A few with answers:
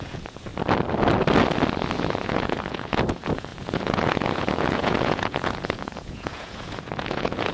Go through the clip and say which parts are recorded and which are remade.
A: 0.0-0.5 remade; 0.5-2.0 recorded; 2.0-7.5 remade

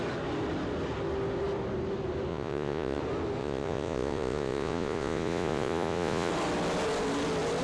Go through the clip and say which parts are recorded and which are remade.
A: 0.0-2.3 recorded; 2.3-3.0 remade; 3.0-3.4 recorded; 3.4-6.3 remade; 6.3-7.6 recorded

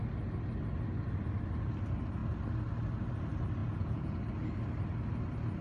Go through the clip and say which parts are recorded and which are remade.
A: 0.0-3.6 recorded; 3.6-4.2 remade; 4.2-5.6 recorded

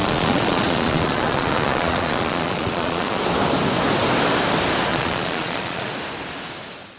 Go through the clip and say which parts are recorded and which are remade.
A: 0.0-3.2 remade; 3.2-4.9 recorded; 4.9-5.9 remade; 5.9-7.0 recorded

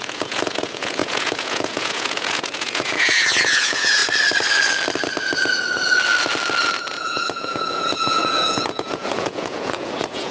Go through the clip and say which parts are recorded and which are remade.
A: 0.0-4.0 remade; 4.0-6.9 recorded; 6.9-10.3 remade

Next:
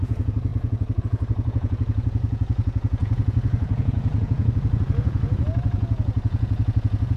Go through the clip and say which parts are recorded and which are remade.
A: 0.0-7.2 remade

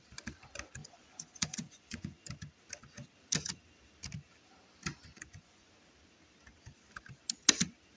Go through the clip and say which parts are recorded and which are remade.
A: 0.0-0.8 recorded; 0.8-2.2 remade; 2.2-5.1 recorded; 5.1-5.7 remade; 5.7-8.0 recorded